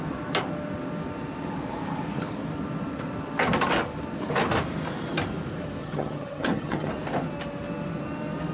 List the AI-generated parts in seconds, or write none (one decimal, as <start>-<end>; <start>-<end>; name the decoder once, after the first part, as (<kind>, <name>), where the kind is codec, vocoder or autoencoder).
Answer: 5.8-6.9 (vocoder, HiFi-GAN)